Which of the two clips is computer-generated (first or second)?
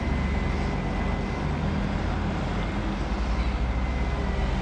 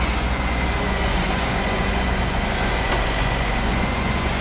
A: second